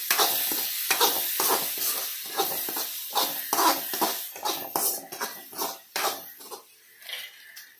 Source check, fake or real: real